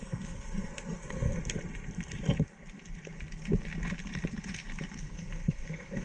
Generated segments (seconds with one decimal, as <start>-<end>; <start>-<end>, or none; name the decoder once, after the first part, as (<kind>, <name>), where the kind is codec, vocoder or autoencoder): 0.0-1.4 (codec, SNAC); 5.0-6.0